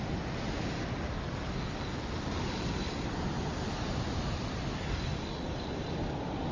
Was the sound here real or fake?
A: real